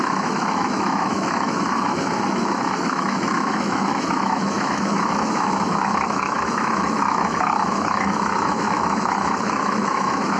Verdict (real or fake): fake